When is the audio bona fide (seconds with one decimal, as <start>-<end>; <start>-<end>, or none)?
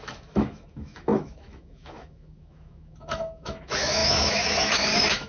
none